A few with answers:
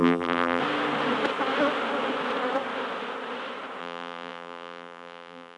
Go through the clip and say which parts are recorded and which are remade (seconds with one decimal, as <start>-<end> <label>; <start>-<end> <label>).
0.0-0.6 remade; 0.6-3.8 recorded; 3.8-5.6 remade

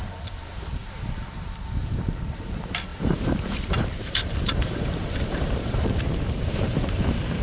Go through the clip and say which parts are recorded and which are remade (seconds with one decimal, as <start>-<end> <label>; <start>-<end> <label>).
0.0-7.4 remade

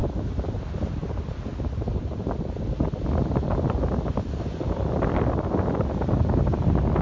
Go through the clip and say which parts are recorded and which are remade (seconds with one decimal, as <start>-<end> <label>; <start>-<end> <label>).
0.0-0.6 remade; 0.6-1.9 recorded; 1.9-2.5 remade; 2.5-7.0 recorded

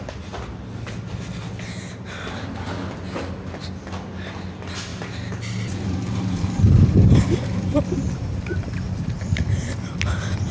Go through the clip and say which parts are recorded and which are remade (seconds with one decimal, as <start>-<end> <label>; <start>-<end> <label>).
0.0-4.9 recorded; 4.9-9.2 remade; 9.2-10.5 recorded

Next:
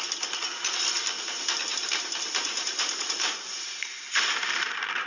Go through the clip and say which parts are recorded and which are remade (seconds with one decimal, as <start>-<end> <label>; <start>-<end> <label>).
0.0-1.7 recorded; 1.7-5.1 remade

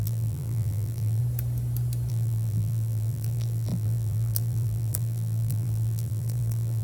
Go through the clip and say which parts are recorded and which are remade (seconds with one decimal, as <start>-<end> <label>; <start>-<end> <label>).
0.0-1.2 remade; 1.2-2.1 recorded; 2.1-6.8 remade

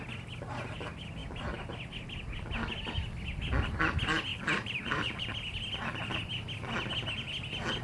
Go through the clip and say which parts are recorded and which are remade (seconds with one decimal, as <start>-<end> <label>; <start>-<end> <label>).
0.0-4.3 recorded; 4.3-5.3 remade; 5.3-7.8 recorded